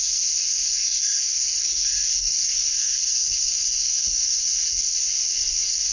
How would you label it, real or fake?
fake